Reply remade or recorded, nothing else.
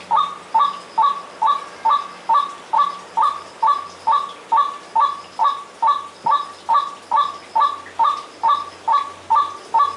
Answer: recorded